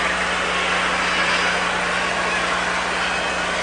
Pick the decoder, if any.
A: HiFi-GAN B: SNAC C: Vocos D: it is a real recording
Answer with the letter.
D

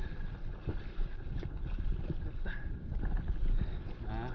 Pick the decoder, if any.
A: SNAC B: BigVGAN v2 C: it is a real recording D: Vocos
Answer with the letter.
C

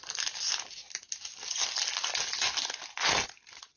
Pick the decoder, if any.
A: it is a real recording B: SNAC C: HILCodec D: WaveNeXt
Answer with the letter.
A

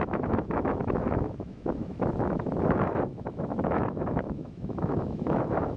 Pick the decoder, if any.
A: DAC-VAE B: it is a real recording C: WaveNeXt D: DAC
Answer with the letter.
A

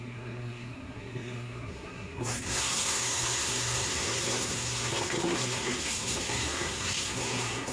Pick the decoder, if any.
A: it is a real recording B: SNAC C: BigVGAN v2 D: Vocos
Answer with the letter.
B